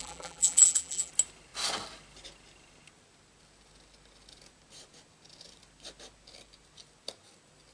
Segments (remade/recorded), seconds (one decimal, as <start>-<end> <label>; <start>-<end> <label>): 0.0-1.1 remade; 1.1-7.7 recorded